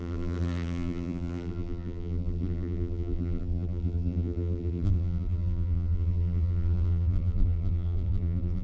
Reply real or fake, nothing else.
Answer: fake